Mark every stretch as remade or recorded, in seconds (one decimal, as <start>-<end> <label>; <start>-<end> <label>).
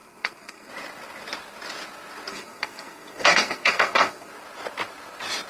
0.0-0.7 remade; 0.7-2.3 recorded; 2.3-4.3 remade; 4.3-5.5 recorded